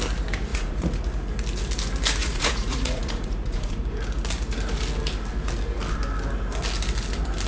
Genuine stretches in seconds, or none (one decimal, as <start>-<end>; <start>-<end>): 0.0-0.5; 1.0-2.2; 3.8-7.5